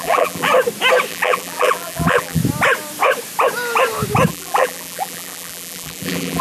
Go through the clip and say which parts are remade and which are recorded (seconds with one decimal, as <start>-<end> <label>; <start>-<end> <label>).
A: 0.0-0.5 remade; 0.5-1.1 recorded; 1.1-2.4 remade; 2.4-4.3 recorded; 4.3-6.4 remade